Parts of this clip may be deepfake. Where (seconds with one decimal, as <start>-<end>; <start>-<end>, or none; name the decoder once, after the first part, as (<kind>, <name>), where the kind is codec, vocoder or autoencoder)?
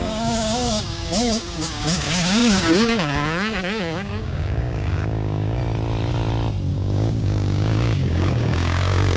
0.0-5.6 (codec, DAC); 6.7-9.2